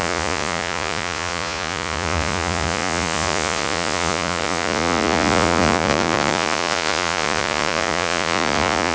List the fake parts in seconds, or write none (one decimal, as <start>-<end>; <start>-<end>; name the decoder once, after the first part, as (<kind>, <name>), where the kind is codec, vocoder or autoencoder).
0.0-8.9 (vocoder, Vocos)